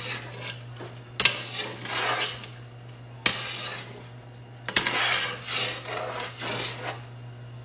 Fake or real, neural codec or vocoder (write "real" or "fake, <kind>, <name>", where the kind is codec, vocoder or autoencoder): real